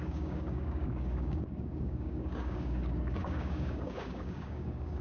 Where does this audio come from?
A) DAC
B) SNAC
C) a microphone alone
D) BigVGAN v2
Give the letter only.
A